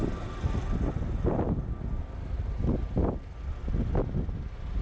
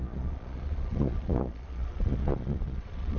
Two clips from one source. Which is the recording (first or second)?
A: first